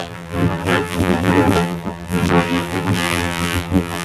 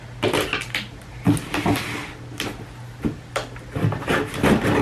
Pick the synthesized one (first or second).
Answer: first